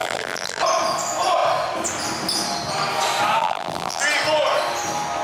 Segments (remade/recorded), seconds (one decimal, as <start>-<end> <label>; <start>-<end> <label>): 0.0-0.6 remade; 0.6-3.4 recorded; 3.4-4.0 remade; 4.0-5.2 recorded